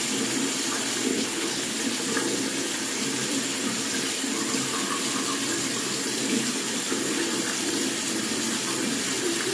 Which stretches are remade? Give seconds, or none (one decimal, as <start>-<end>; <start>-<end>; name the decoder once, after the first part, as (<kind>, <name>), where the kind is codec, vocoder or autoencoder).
1.1-1.7 (codec, HILCodec)